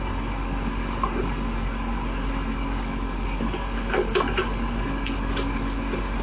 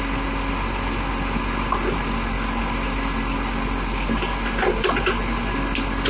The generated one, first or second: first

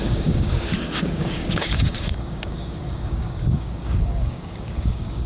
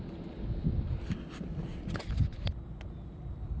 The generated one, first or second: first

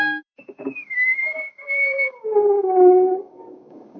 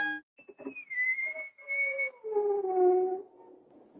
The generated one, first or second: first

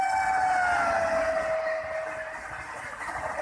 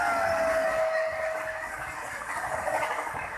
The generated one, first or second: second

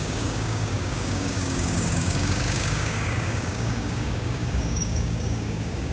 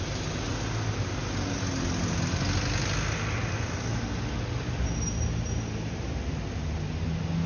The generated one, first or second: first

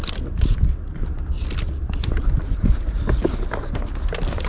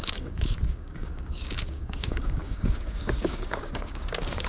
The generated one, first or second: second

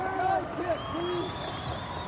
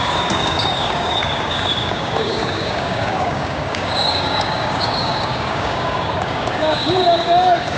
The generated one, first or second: second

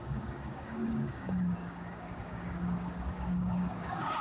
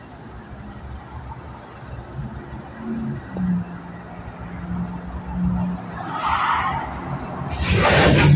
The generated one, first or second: first